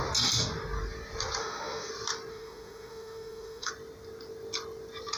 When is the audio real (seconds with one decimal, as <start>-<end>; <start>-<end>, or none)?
0.0-1.4; 1.9-2.3; 3.7-5.2